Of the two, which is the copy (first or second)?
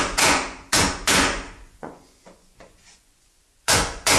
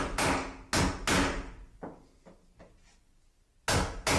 first